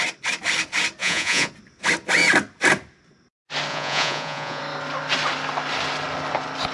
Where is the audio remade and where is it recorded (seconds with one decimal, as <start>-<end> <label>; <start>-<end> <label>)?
0.0-1.0 recorded; 1.0-1.5 remade; 1.5-3.7 recorded; 3.7-4.6 remade; 4.6-6.7 recorded